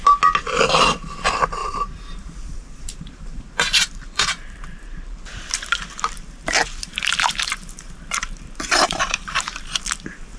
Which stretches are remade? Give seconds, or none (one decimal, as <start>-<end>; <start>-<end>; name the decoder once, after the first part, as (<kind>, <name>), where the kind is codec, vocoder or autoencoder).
1.6-5.2 (vocoder, BigVGAN v2); 6.6-9.8